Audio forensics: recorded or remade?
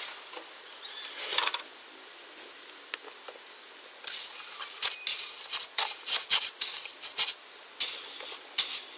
recorded